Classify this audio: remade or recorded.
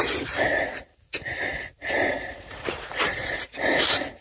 remade